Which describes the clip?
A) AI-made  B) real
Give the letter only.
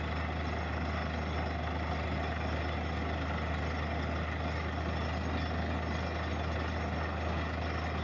B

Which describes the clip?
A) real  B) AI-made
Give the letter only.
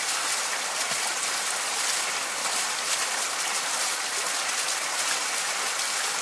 A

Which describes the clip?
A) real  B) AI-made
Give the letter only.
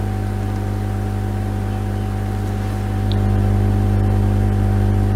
A